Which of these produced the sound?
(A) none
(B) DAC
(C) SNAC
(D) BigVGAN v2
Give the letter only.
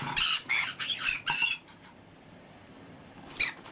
D